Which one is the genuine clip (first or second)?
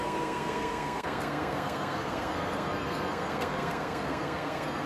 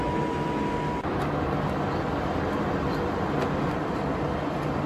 second